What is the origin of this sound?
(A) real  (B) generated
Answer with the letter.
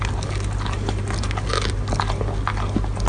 A